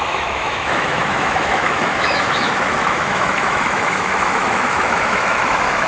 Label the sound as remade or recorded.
remade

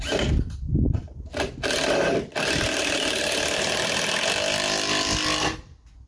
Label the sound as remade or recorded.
recorded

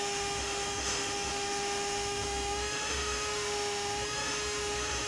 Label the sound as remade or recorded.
remade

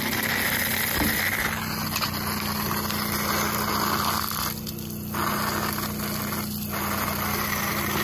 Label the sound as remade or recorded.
recorded